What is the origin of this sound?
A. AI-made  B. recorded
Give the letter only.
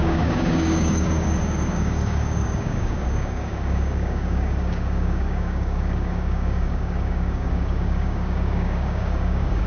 A